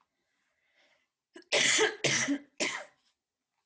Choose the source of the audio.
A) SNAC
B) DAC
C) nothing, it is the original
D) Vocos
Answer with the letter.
C